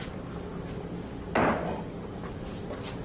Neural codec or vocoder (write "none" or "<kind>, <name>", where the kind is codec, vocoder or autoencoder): none